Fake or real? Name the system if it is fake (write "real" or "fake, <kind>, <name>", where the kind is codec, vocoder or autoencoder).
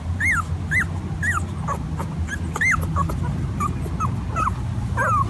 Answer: real